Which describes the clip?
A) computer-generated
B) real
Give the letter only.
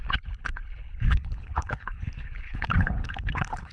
A